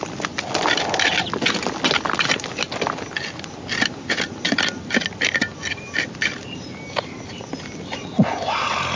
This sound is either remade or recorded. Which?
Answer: recorded